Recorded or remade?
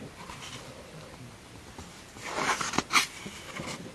recorded